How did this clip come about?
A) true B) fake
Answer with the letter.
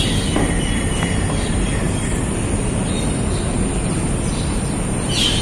A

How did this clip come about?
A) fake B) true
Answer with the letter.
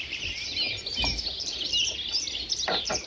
B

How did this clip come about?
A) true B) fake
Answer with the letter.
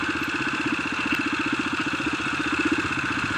A